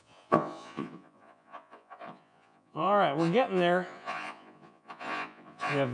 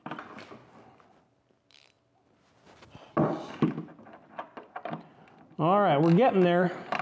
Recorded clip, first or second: second